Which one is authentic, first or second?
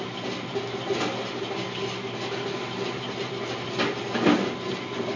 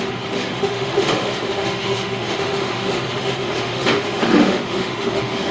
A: first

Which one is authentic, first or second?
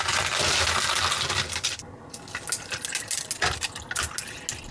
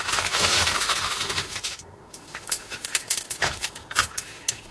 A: first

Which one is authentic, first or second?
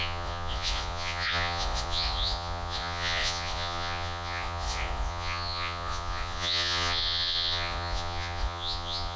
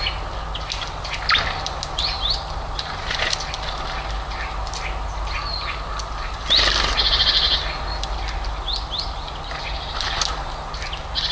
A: second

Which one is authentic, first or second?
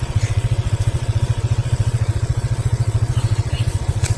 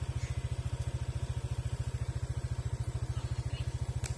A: second